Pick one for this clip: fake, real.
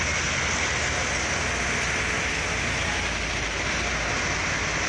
real